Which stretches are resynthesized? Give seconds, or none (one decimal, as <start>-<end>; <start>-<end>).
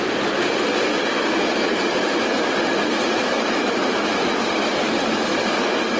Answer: 1.7-5.3